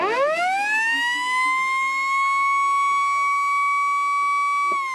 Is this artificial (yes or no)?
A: no